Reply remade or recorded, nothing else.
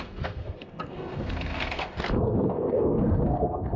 remade